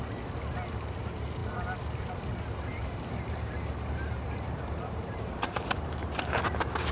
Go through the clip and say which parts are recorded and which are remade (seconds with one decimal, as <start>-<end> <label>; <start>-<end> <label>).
0.0-2.7 recorded; 2.7-6.9 remade